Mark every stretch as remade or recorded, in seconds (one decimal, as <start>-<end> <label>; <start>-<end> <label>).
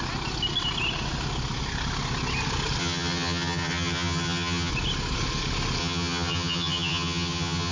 0.0-2.8 recorded; 2.8-4.7 remade; 4.7-5.8 recorded; 5.8-7.7 remade